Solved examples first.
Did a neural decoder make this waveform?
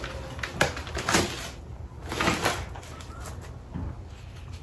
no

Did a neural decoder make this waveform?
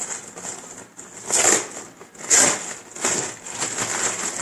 no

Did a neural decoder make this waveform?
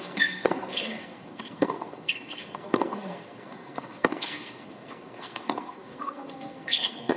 yes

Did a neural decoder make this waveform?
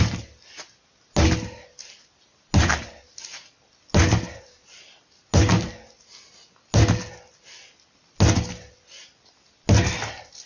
no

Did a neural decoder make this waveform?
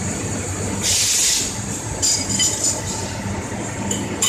no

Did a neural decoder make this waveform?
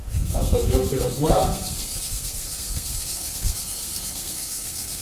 yes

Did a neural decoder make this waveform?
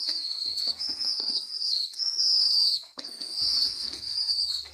yes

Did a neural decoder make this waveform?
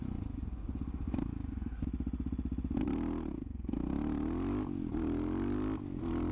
no